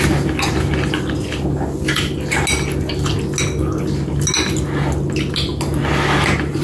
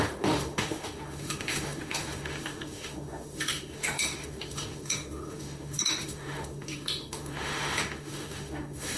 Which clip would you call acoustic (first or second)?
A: first